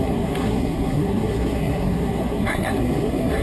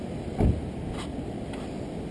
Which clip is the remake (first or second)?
first